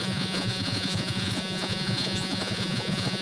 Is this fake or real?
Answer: fake